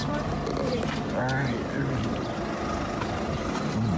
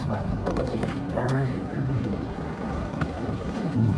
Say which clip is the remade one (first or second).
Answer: second